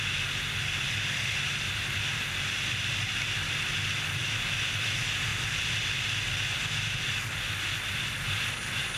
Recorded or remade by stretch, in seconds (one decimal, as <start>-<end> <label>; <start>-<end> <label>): 0.0-9.0 recorded